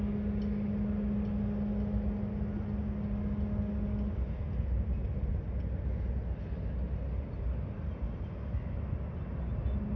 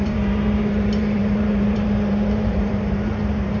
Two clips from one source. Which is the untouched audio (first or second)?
first